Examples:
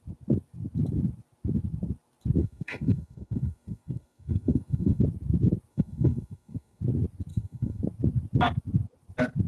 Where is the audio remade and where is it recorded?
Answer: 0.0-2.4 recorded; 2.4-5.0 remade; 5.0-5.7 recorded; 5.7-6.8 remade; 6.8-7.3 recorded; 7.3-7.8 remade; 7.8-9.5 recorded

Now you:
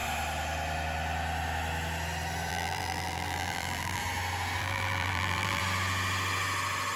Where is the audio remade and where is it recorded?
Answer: 0.0-2.5 recorded; 2.5-4.0 remade; 4.0-4.6 recorded; 4.6-5.6 remade; 5.6-7.0 recorded

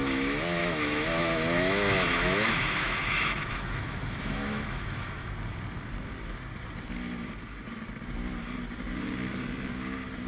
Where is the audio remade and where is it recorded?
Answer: 0.0-0.6 recorded; 0.6-5.3 remade; 5.3-10.3 recorded